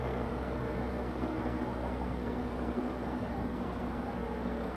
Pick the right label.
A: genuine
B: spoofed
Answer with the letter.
B